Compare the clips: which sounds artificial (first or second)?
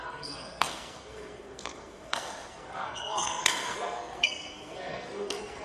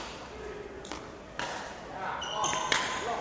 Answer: first